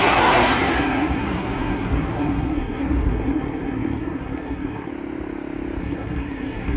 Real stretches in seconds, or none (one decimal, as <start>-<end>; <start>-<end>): 4.9-5.8